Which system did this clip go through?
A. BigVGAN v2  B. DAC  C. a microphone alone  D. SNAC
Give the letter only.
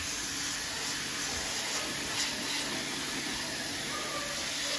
C